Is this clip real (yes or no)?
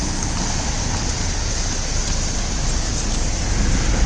yes